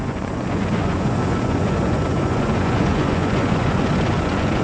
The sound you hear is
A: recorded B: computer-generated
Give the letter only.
B